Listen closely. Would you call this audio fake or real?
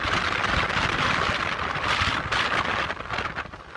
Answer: real